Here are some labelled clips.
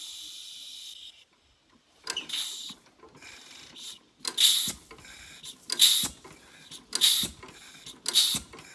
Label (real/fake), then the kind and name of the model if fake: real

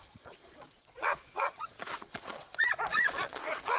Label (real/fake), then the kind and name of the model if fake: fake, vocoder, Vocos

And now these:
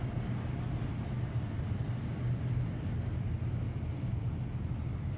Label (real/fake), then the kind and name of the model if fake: real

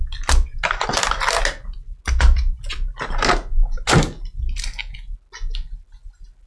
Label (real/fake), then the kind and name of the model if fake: real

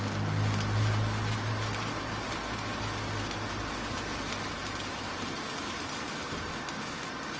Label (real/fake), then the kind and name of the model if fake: real